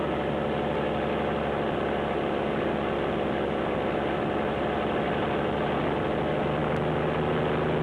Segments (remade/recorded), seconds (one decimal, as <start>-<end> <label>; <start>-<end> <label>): 0.0-7.8 recorded